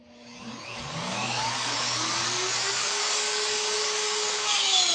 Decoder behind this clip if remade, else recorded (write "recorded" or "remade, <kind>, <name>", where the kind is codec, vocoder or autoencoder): remade, codec, DAC